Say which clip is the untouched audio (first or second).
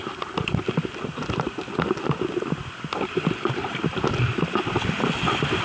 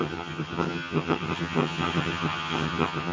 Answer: first